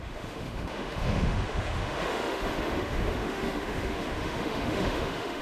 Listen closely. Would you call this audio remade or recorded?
remade